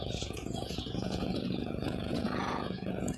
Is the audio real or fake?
fake